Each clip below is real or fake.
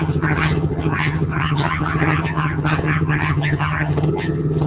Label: fake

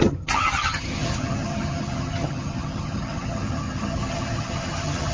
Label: fake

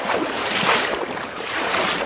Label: real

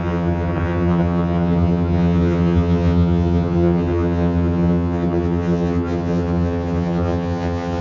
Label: fake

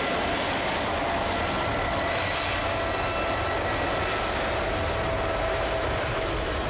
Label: real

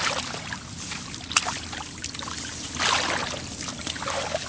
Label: real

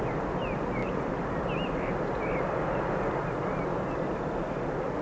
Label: real